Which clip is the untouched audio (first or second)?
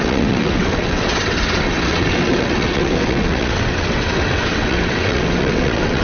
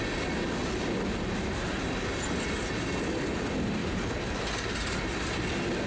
second